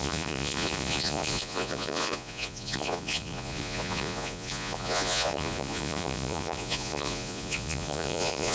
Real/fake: fake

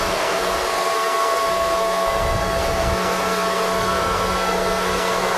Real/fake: fake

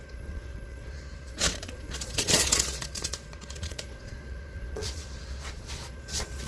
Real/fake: fake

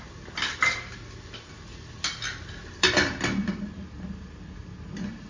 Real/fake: real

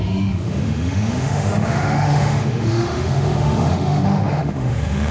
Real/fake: fake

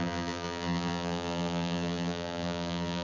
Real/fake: fake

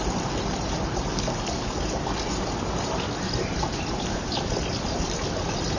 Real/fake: real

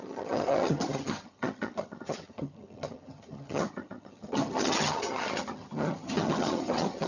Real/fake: fake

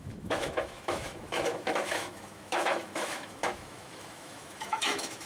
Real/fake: fake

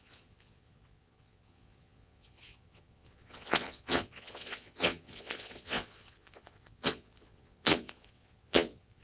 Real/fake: fake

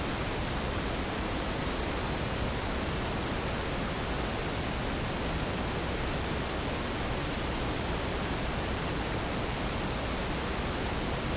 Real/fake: real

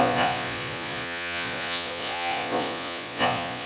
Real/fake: fake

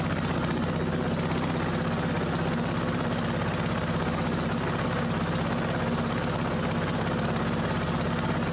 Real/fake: real